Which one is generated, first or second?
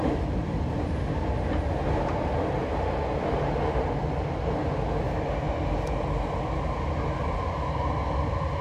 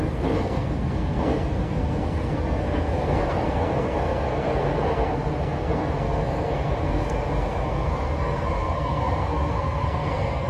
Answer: second